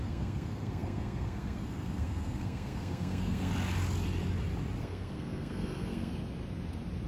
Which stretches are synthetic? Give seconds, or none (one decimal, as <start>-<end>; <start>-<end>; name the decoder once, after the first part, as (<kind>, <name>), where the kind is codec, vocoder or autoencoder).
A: 0.0-3.5 (codec, SNAC); 4.8-6.1